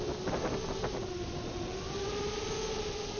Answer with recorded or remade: recorded